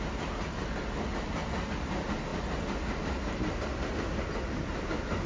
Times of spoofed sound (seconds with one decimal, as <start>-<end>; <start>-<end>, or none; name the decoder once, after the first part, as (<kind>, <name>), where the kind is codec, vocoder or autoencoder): none